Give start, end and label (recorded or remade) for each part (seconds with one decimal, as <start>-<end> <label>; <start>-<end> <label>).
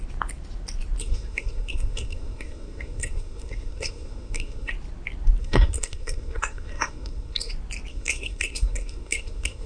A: 0.0-1.0 recorded; 1.0-4.7 remade; 4.7-5.4 recorded; 5.4-7.5 remade; 7.5-7.9 recorded; 7.9-9.7 remade